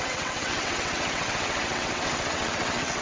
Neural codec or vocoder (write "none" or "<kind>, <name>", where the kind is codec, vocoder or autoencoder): vocoder, WaveNeXt